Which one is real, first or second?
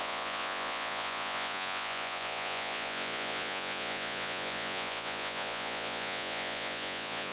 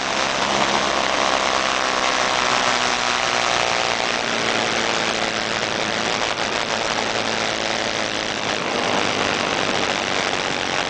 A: second